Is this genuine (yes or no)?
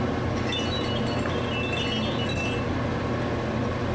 yes